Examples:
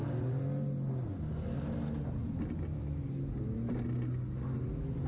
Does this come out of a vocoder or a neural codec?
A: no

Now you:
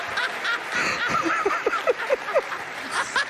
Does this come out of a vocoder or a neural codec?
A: no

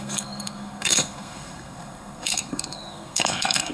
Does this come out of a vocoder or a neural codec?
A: yes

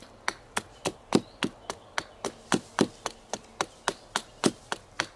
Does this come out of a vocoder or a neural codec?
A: no